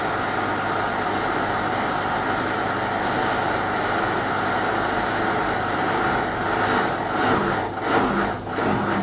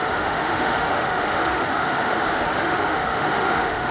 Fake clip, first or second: second